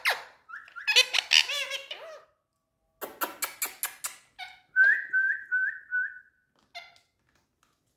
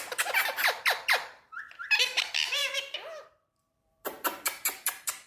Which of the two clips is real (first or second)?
first